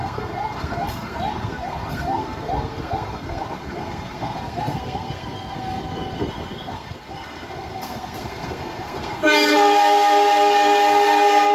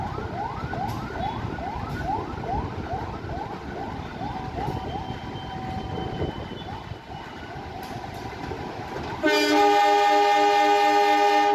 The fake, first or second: first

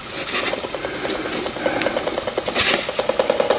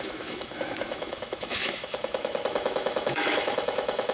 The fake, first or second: second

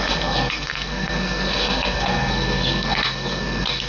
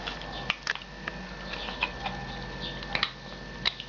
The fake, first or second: first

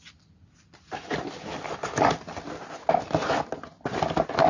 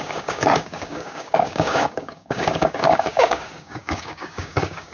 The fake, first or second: second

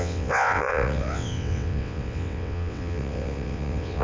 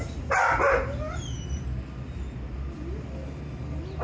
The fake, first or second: first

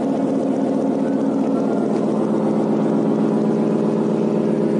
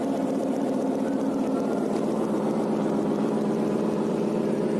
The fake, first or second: second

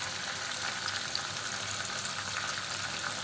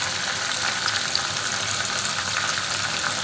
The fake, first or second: second